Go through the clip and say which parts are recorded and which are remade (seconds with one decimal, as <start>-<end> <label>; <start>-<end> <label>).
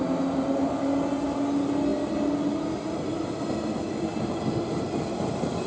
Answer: 0.0-5.7 recorded